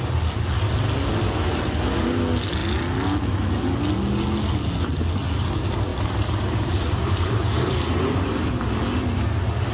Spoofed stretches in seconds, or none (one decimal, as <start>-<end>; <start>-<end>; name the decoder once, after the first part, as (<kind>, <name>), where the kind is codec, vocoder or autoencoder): 5.9-8.6 (vocoder, BigVGAN v2)

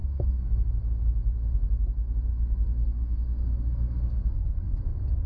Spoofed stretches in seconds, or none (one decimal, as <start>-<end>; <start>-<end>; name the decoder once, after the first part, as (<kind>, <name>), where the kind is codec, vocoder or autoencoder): 0.0-0.7 (codec, SNAC); 2.3-4.8